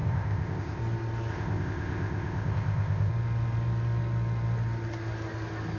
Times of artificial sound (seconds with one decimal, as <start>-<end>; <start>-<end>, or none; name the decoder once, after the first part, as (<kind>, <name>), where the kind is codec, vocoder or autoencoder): 0.0-0.8 (codec, ZipCodec); 1.3-3.1